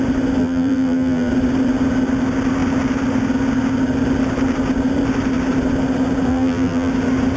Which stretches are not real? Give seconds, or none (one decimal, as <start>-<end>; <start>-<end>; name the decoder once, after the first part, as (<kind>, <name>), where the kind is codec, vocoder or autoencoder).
0.4-1.3 (vocoder, BigVGAN v2); 6.3-6.9

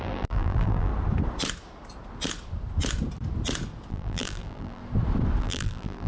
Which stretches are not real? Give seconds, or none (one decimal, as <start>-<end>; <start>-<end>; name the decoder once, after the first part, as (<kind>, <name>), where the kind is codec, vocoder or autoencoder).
0.0-0.9 (vocoder, BigVGAN v2); 3.9-4.8; 5.4-6.1

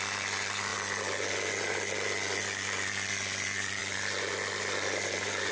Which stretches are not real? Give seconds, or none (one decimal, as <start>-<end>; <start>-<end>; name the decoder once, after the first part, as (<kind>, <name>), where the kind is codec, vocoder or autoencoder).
0.0-0.7 (vocoder, BigVGAN v2); 1.6-5.5

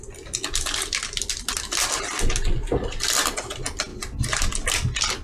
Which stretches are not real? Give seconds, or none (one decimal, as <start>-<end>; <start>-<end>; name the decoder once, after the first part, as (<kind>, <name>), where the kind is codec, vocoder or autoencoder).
none